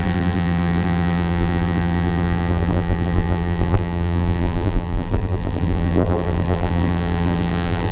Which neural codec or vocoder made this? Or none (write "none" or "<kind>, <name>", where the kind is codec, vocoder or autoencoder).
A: vocoder, BigVGAN v2